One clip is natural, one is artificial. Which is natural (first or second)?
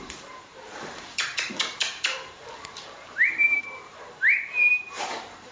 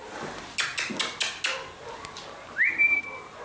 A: second